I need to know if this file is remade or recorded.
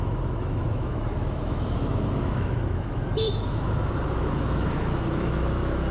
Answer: remade